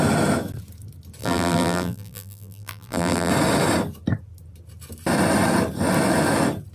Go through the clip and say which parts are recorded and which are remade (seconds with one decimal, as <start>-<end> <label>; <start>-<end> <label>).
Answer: 0.0-1.2 recorded; 1.2-3.3 remade; 3.3-6.7 recorded